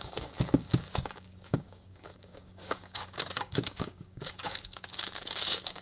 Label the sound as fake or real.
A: fake